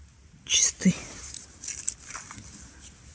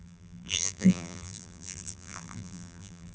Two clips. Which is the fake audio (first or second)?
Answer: second